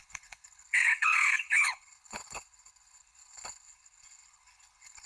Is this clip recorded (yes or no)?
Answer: no